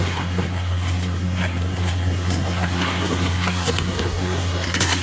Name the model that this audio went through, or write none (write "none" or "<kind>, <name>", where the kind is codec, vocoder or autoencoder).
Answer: codec, SNAC